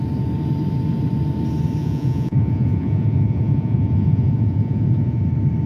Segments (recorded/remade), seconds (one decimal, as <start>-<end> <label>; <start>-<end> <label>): 0.0-1.8 recorded; 1.8-5.2 remade; 5.2-5.7 recorded